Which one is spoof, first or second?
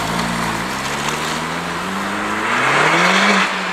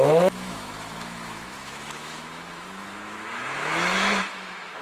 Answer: second